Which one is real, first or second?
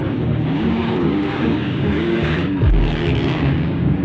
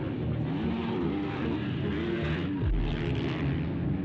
second